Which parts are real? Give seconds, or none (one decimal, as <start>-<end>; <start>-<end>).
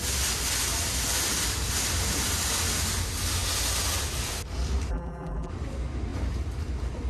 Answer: 0.0-4.9; 5.5-7.1